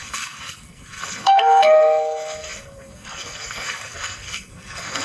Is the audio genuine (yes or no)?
no